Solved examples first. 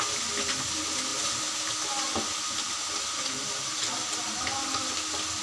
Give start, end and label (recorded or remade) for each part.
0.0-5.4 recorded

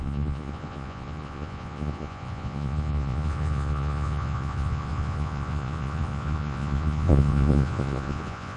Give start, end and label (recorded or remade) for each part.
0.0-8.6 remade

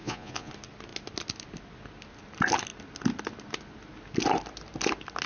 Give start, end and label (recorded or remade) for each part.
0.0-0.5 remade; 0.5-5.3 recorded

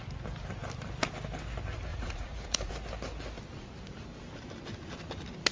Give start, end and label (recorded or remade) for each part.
0.0-1.9 recorded; 1.9-2.7 remade; 2.7-5.5 recorded

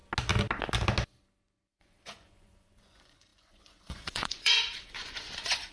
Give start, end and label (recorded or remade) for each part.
0.0-1.8 recorded; 1.8-5.7 remade

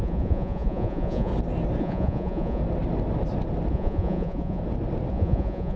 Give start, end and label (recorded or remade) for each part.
0.0-1.3 remade; 1.3-1.8 recorded; 1.8-2.6 remade; 2.6-3.7 recorded; 3.7-4.6 remade; 4.6-5.1 recorded; 5.1-5.8 remade

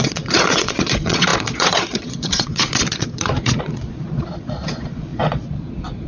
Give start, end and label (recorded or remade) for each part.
0.0-6.1 remade

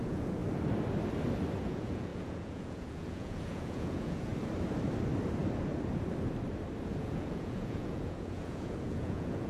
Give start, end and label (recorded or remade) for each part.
0.0-0.4 remade; 0.4-1.6 recorded; 1.6-4.3 remade; 4.3-7.0 recorded; 7.0-9.5 remade